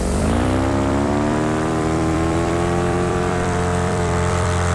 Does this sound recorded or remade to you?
remade